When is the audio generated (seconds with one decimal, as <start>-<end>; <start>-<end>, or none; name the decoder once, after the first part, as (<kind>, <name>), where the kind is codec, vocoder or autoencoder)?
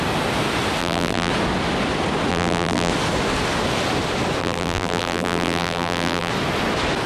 0.8-1.3 (vocoder, BigVGAN v2); 2.3-2.9; 4.4-6.3